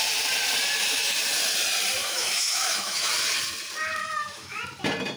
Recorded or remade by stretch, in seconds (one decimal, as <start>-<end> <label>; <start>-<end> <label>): 0.0-2.0 recorded; 2.0-3.1 remade; 3.1-4.0 recorded; 4.0-4.6 remade; 4.6-5.2 recorded